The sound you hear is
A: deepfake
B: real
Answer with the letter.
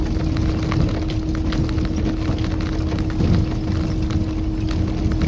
B